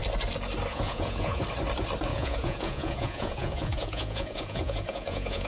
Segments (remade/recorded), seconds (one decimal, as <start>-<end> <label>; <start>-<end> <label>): 0.0-0.7 recorded; 0.7-1.4 remade; 1.4-2.1 recorded; 2.1-5.5 remade